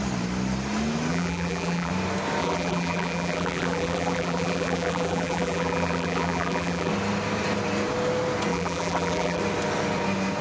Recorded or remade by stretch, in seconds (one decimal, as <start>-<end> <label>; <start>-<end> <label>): 0.0-1.1 recorded; 1.1-1.9 remade; 1.9-2.4 recorded; 2.4-6.9 remade; 6.9-8.5 recorded; 8.5-9.4 remade; 9.4-10.4 recorded